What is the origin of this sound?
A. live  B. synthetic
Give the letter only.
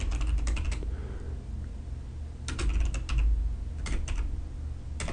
A